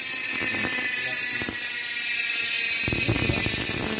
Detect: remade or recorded recorded